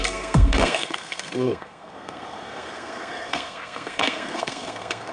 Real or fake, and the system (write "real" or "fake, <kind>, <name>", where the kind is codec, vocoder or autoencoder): fake, codec, SNAC